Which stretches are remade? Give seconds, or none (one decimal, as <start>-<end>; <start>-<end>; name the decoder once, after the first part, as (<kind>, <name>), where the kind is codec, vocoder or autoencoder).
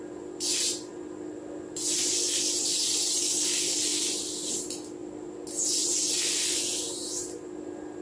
none